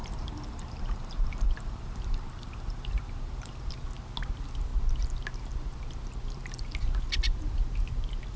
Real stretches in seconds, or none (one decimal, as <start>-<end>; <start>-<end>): 3.7-8.4